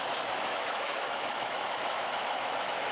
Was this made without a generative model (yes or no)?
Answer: no